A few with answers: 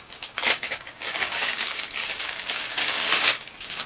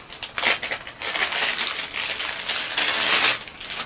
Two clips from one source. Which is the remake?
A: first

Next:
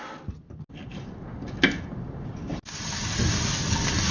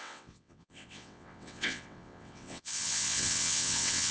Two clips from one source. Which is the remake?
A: second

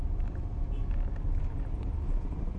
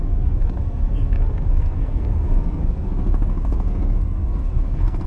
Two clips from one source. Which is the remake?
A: second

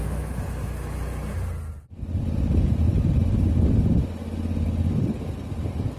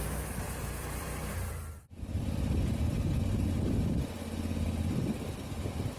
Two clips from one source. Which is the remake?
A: second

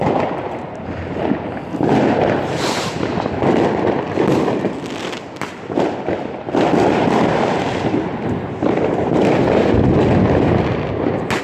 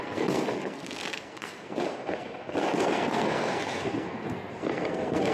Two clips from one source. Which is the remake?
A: second